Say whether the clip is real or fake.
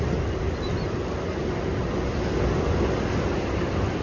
real